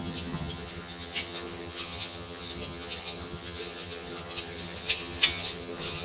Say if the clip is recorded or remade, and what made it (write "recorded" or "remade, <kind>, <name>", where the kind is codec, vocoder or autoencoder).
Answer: remade, vocoder, HiFi-GAN